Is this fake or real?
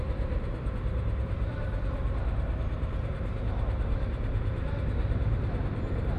fake